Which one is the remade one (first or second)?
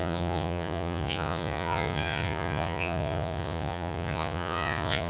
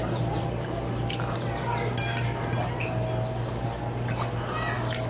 first